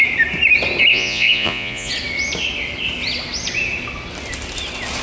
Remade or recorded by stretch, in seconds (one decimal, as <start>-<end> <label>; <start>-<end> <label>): 0.0-0.9 recorded; 0.9-1.9 remade; 1.9-5.0 recorded